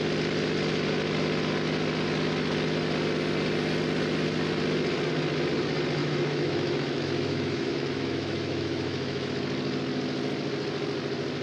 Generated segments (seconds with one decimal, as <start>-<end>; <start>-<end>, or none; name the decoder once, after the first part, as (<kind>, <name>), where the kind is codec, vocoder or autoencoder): 6.0-9.3 (autoencoder, DAC-VAE)